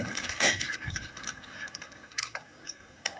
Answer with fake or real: fake